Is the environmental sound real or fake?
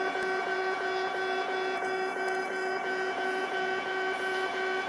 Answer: fake